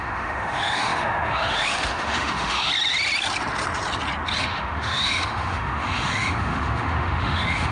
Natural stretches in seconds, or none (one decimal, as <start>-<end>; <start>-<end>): 2.7-4.4